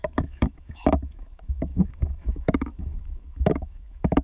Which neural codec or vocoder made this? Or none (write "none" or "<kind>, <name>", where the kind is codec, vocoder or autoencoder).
autoencoder, DAC-VAE